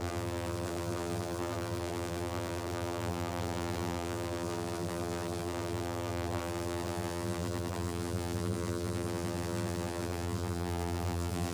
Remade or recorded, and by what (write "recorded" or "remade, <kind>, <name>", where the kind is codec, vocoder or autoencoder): remade, vocoder, BigVGAN v2